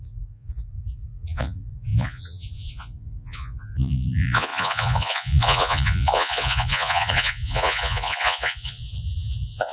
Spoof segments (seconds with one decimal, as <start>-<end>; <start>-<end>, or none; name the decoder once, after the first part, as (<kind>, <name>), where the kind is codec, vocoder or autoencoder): 0.0-9.7 (vocoder, Vocos)